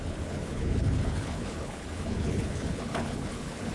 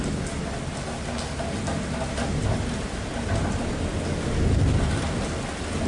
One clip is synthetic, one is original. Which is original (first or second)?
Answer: second